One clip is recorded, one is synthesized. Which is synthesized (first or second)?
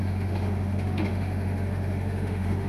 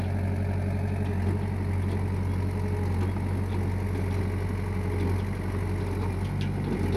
first